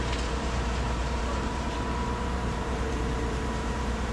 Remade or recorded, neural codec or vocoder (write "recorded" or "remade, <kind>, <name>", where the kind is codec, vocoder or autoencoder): remade, vocoder, BigVGAN v2